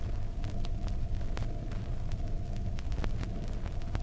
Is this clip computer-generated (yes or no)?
no